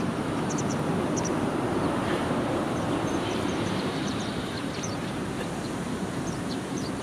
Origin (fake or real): fake